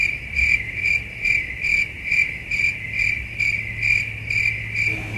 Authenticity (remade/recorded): recorded